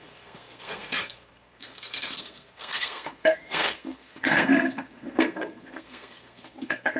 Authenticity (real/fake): fake